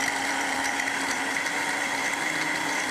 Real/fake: fake